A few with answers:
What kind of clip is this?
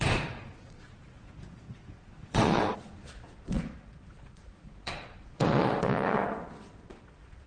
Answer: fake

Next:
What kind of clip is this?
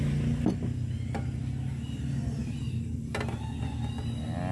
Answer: real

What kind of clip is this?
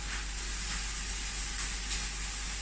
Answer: real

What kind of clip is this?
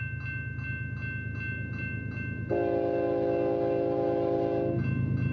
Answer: real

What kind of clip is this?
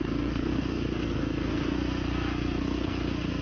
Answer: fake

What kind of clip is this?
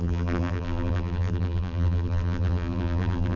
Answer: fake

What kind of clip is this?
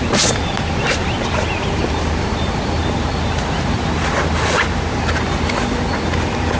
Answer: real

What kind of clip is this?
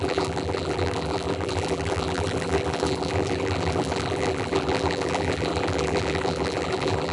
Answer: fake